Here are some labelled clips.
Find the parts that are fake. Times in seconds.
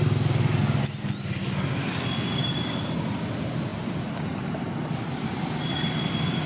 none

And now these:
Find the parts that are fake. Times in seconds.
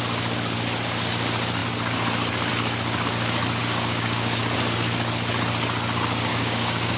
3.6-4.4 (codec, DAC); 6.3-7.0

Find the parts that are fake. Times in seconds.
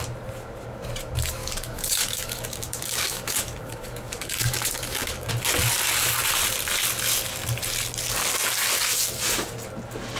1.4-5.3 (codec, DAC)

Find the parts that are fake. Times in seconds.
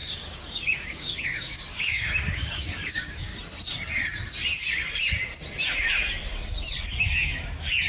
0.0-3.3 (codec, DAC); 6.8-7.9